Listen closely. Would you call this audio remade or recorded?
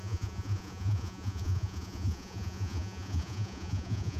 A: remade